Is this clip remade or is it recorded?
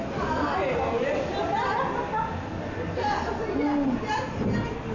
recorded